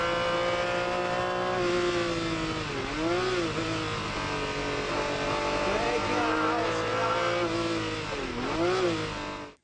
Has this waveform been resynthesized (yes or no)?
no